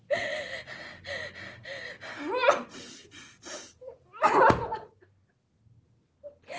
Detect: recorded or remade recorded